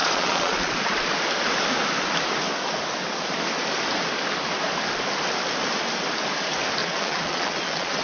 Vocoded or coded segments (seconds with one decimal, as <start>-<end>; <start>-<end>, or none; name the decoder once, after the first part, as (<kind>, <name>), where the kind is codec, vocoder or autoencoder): 0.0-0.8 (vocoder, Vocos); 6.8-8.0